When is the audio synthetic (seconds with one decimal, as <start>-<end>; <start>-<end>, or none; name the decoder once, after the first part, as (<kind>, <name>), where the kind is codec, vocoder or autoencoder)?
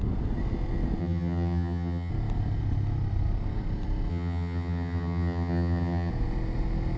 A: 1.0-2.1 (vocoder, HiFi-GAN); 4.1-6.1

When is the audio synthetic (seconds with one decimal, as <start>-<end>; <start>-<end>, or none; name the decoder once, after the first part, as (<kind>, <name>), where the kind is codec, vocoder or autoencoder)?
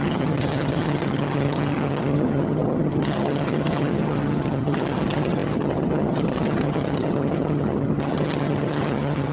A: 0.0-9.3 (vocoder, HiFi-GAN)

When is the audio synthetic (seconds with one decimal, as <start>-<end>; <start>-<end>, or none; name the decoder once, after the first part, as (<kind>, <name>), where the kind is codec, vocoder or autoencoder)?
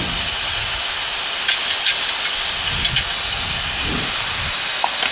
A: none